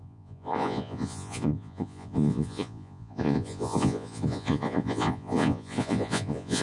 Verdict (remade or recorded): remade